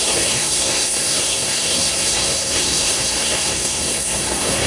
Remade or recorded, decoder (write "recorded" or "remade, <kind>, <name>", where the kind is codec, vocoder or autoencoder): remade, codec, SNAC